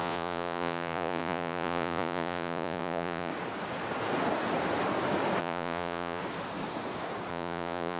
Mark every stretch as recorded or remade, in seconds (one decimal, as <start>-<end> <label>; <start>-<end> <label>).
0.0-3.3 remade; 3.3-5.4 recorded; 5.4-6.2 remade; 6.2-7.3 recorded; 7.3-8.0 remade